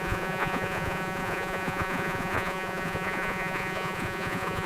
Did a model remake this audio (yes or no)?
yes